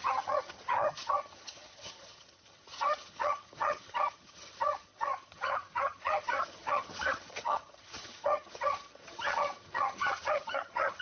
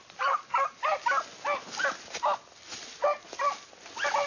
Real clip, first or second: second